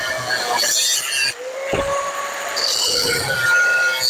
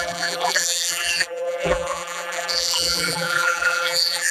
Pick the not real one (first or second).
second